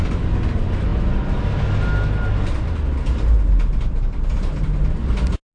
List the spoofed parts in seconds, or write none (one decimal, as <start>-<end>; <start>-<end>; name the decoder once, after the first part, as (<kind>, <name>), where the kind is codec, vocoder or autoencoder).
none